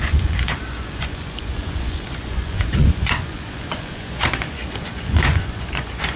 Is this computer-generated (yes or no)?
yes